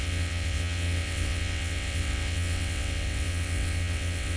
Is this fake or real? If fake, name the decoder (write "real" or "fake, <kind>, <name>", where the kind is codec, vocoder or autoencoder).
fake, vocoder, WaveNeXt